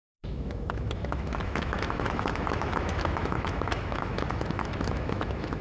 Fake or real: fake